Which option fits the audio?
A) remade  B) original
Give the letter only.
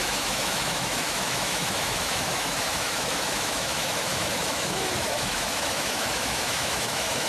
A